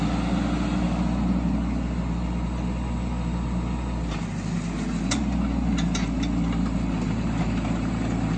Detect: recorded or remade recorded